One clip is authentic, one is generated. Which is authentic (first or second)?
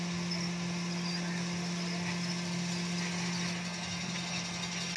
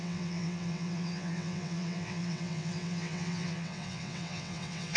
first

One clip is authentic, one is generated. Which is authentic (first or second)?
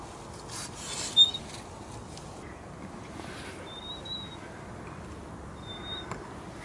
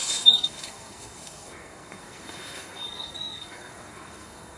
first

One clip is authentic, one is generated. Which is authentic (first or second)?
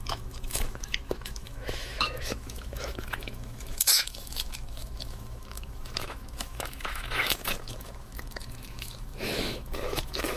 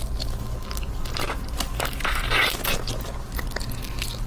second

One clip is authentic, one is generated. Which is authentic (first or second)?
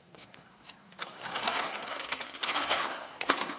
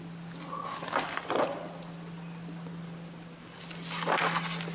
second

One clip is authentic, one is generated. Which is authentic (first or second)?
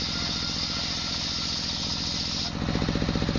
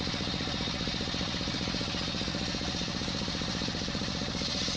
first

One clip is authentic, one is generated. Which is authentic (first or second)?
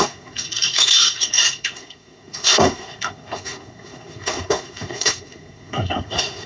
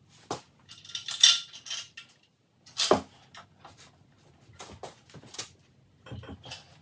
second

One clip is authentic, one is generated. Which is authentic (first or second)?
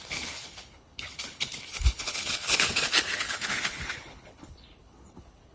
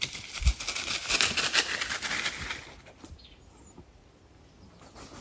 second